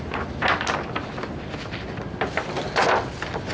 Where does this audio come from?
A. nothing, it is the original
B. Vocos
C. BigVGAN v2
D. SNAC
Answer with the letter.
A